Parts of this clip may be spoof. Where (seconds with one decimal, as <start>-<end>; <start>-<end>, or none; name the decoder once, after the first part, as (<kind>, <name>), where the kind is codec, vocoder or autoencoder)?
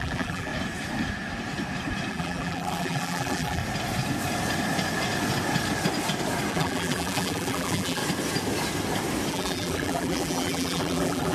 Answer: 0.0-0.5 (vocoder, BigVGAN v2); 2.1-3.6; 6.5-8.0; 9.3-11.3